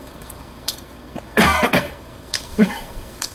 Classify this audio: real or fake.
fake